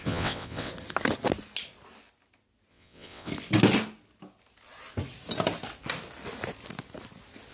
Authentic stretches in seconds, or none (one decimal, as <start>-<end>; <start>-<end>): 0.7-2.7; 3.3-7.5